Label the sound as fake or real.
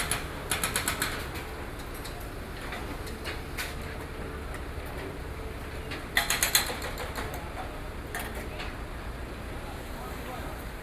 real